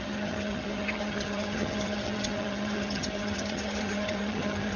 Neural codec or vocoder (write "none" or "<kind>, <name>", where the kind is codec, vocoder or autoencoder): vocoder, HiFi-GAN